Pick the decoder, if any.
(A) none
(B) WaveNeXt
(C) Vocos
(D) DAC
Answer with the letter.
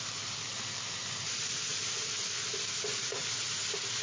A